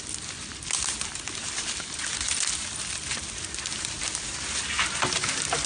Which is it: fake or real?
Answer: real